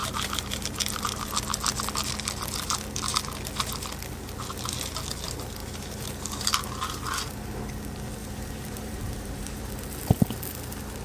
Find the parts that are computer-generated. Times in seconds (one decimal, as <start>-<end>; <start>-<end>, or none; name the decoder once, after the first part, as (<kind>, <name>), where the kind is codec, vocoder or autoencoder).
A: 0.0-1.3 (vocoder, BigVGAN v2); 5.6-6.6; 8.2-9.7